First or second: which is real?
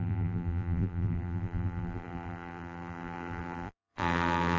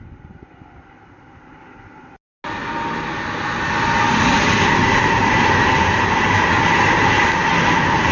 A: second